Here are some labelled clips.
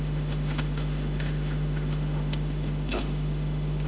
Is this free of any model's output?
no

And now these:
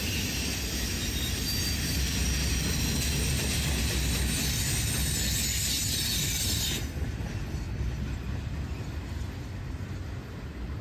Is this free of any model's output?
yes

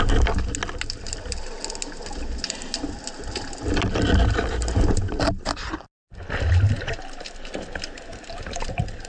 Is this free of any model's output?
yes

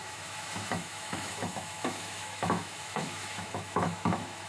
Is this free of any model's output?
no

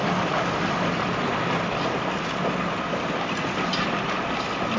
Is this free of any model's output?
yes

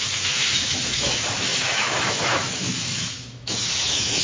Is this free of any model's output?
no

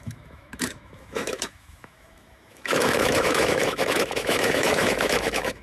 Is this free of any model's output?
no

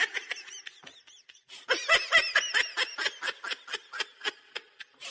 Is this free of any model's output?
yes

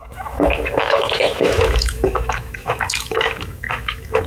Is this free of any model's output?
no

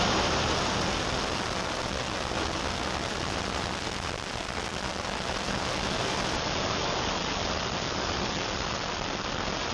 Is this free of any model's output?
yes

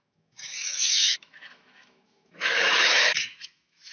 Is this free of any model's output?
no